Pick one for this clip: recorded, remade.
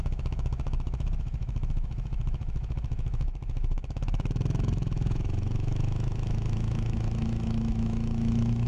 remade